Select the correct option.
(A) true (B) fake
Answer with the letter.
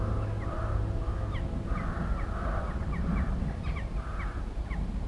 A